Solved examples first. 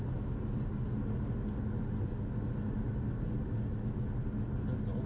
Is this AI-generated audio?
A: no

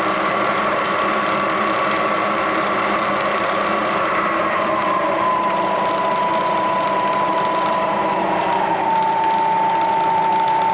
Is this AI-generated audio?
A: yes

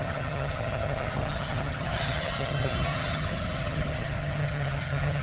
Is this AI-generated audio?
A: yes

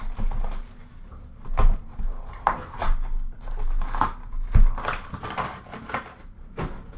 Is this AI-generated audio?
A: no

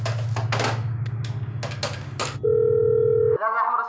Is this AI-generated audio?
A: no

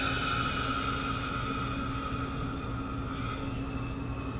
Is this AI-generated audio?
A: no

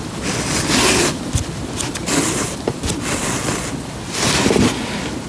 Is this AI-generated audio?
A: no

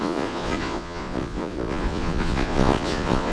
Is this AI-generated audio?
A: yes